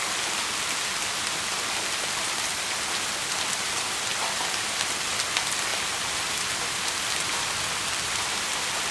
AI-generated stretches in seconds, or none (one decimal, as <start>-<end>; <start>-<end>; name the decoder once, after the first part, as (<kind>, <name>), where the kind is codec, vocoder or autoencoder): none